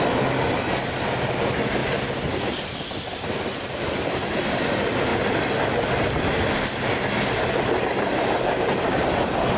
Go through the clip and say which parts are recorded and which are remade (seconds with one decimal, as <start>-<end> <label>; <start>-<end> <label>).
0.0-5.1 remade; 5.1-7.2 recorded; 7.2-9.6 remade